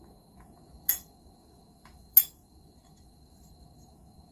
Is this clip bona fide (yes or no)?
no